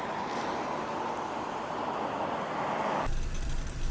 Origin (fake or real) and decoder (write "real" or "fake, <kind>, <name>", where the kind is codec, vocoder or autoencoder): real